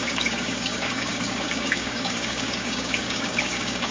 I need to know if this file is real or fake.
fake